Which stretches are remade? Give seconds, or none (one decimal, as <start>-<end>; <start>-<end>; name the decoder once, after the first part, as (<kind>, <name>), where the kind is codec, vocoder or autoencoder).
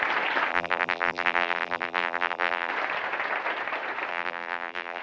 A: 0.5-2.7 (vocoder, BigVGAN v2); 4.1-5.0